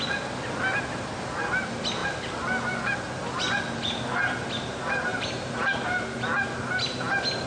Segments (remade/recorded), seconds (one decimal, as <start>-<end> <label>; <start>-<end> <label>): 0.0-5.1 recorded; 5.1-5.7 remade; 5.7-7.5 recorded